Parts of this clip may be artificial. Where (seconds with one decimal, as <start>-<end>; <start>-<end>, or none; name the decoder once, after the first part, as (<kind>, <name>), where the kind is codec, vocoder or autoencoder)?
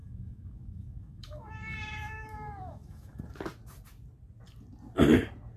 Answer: 0.0-3.2 (autoencoder, DAC-VAE)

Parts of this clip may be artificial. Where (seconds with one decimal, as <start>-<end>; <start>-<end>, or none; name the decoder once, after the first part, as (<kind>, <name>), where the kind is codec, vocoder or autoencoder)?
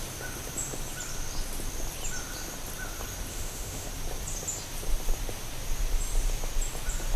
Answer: 3.3-3.9 (autoencoder, DAC-VAE)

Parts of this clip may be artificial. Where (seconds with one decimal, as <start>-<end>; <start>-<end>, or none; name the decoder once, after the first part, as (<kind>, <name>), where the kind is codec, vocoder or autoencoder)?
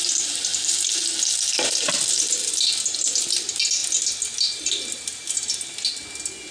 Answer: none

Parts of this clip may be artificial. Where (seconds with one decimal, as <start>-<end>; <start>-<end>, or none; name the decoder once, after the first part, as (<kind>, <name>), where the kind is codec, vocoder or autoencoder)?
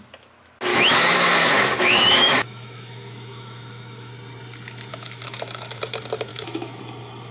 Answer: 0.7-4.1 (autoencoder, DAC-VAE); 4.9-5.8; 6.3-6.8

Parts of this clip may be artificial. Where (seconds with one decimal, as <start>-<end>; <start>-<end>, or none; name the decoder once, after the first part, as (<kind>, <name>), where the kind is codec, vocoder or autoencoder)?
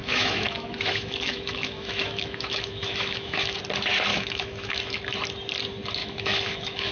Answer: 0.0-3.6 (autoencoder, DAC-VAE); 4.1-5.0; 6.0-6.9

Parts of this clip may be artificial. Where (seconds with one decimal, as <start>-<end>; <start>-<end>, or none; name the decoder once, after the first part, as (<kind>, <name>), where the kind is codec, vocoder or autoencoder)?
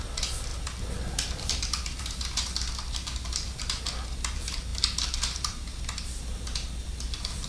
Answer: none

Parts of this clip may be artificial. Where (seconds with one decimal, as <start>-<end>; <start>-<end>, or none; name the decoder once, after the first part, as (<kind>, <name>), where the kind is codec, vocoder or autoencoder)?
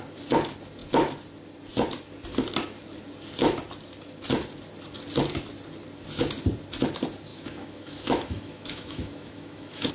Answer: 7.3-9.9 (autoencoder, DAC-VAE)